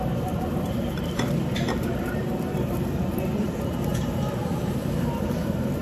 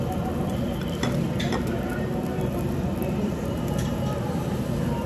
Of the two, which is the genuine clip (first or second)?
second